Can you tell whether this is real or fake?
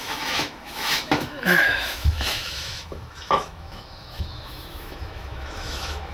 fake